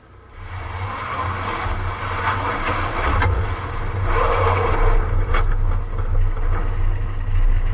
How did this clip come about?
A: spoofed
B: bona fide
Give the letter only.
B